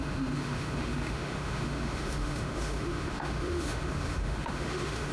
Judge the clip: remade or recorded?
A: remade